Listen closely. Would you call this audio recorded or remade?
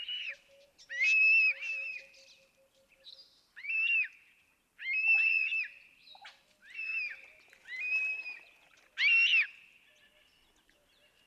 recorded